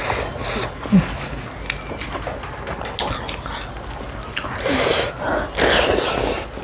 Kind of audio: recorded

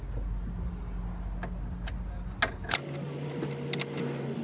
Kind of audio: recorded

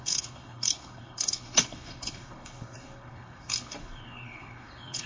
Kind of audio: remade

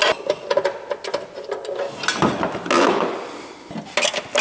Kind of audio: recorded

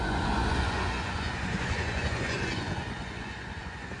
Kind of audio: remade